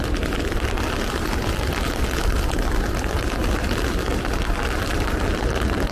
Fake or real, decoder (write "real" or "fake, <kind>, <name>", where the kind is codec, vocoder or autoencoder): real